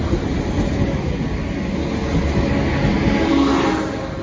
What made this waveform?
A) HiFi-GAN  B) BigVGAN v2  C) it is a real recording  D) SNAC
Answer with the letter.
C